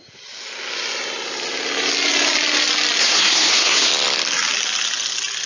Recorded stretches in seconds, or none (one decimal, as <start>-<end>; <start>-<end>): 0.0-3.0; 3.9-5.5